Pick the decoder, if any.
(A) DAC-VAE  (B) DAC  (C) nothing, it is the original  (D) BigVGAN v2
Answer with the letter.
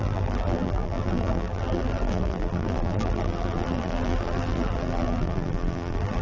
D